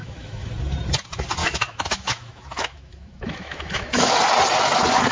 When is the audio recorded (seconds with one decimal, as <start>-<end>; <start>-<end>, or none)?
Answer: 0.5-1.4; 4.1-5.1